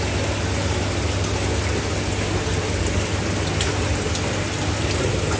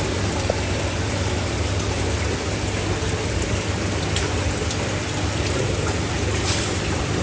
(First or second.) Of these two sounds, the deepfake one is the second